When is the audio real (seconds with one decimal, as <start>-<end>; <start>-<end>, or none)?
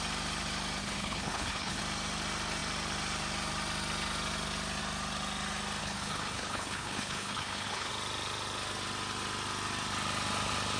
0.0-0.8; 1.8-5.8; 7.9-10.8